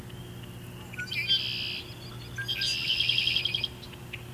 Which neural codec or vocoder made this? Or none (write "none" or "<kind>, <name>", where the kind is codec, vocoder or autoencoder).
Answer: none